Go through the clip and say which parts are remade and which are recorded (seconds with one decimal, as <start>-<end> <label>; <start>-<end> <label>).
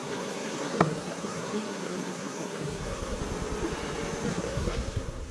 0.0-3.2 remade; 3.2-4.3 recorded; 4.3-5.3 remade